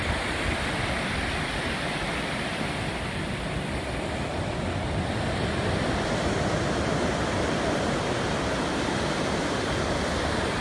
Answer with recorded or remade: recorded